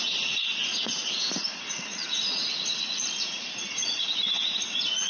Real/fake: fake